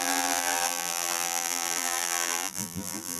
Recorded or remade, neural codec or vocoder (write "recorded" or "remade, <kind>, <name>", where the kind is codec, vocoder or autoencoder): remade, vocoder, BigVGAN v2